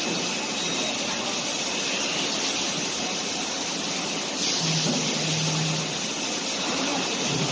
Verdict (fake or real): real